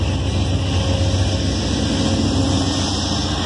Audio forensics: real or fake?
real